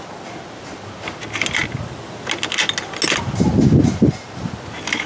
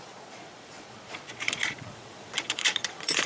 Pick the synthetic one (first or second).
second